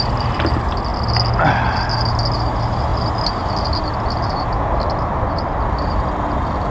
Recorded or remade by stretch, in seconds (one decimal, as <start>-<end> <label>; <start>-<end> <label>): 0.0-6.7 recorded